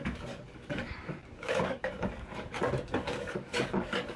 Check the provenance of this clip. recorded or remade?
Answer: remade